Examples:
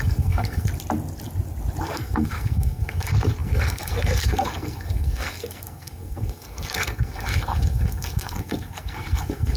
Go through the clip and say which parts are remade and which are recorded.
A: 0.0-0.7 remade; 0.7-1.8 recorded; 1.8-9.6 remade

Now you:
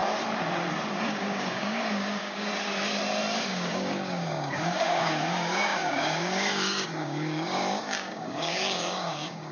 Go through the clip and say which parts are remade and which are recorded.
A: 0.0-0.9 recorded; 0.9-2.5 remade; 2.5-3.4 recorded; 3.4-9.5 remade